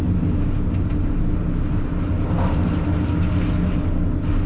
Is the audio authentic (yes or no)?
yes